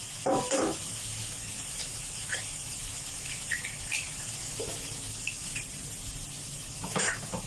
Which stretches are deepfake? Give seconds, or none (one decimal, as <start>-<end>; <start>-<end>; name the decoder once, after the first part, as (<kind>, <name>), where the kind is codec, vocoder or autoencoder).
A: 0.0-5.5 (autoencoder, DAC-VAE); 6.4-7.5